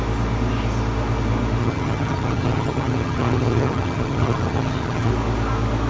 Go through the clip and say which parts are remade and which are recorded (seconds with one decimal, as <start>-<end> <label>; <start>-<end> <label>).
0.0-1.6 recorded; 1.6-5.1 remade; 5.1-5.9 recorded